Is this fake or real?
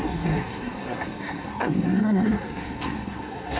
fake